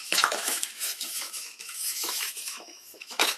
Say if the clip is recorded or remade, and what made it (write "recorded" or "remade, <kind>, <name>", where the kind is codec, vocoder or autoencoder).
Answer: remade, autoencoder, DAC-VAE